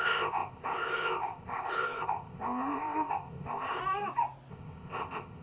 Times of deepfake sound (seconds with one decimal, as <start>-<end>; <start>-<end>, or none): 0.0-3.8; 4.5-5.4